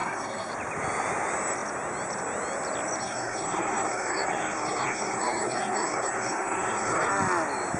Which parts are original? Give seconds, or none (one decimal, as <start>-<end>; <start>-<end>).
0.5-3.0; 7.1-7.8